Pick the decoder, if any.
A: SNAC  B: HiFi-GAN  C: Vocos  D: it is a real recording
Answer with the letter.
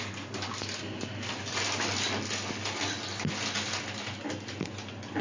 D